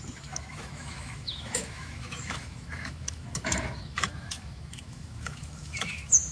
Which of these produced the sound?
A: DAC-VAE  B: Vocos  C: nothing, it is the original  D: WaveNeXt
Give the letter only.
A